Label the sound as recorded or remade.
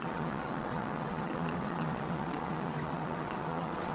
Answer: remade